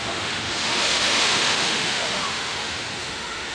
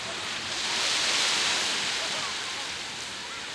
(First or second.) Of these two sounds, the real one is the second